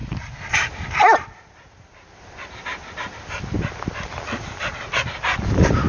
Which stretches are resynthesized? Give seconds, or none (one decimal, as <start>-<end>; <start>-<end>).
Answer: 0.0-0.5